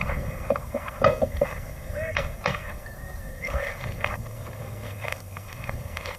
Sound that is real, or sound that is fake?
fake